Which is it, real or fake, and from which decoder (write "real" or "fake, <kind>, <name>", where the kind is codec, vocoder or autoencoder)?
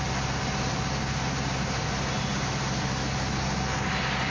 real